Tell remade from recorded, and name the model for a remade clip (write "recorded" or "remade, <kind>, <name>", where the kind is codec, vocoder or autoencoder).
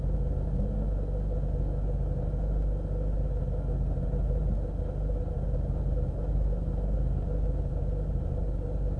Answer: recorded